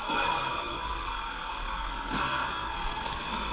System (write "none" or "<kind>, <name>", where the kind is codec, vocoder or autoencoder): codec, SNAC